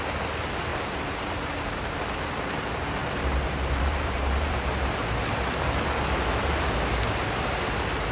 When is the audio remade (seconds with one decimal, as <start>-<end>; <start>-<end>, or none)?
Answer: 0.7-2.0; 3.0-4.7